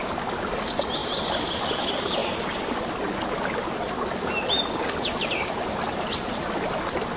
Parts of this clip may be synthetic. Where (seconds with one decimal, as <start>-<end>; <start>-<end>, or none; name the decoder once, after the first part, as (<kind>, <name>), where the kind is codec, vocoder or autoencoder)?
none